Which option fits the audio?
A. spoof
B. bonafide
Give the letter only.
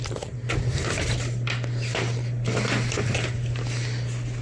B